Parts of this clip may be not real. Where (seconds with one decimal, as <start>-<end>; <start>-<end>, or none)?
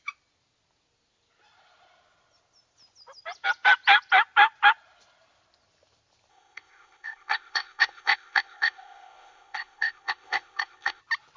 6.3-11.0